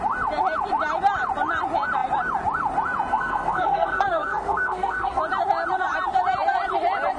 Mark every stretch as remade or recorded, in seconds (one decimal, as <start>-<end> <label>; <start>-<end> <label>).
0.0-3.1 recorded; 3.1-5.2 remade; 5.2-7.2 recorded